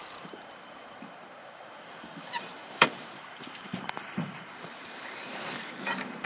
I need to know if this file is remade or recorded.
remade